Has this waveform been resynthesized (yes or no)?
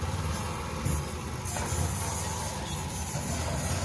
no